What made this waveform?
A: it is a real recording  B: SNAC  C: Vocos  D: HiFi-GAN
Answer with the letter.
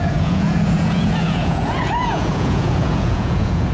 C